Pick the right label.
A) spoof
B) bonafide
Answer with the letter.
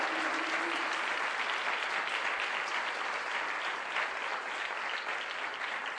B